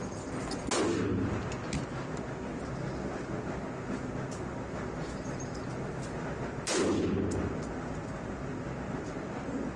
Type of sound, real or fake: real